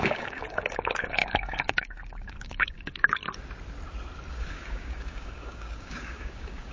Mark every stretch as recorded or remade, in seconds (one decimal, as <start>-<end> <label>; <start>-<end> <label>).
0.0-3.2 remade; 3.2-4.3 recorded; 4.3-6.7 remade